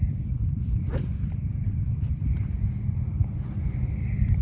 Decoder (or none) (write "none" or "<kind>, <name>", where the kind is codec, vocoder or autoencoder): vocoder, BigVGAN v2